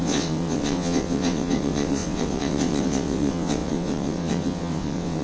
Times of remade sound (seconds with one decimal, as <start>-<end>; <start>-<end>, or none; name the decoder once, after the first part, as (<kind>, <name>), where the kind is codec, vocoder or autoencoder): 0.0-5.2 (vocoder, WaveNeXt)